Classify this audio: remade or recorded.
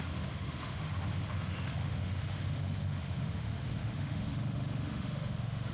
remade